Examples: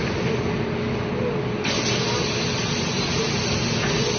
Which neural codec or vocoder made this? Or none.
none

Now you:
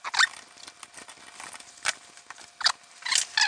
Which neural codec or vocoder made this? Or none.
none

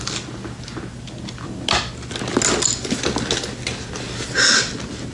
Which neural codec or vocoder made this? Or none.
none